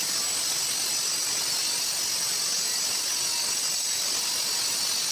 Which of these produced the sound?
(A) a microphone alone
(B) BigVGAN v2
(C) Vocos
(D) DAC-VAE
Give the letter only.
A